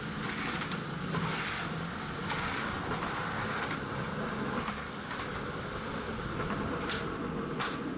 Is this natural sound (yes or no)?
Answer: yes